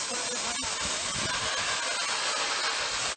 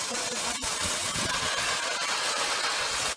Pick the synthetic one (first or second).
second